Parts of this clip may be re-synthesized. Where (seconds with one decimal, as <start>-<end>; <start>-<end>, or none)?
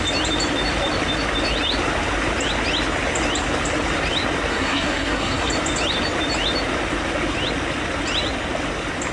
4.5-5.5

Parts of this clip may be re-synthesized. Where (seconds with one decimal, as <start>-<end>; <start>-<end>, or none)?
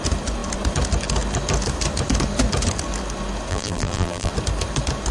3.5-4.3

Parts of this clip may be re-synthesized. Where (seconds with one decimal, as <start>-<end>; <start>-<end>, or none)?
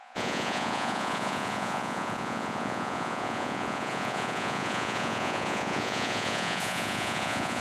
0.0-7.6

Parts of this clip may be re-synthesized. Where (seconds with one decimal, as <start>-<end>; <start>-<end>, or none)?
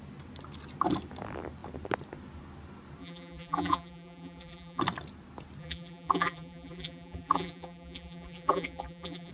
3.0-4.8; 5.6-9.3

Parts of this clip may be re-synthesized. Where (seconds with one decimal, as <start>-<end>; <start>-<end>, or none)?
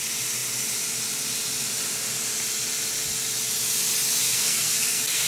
4.2-5.3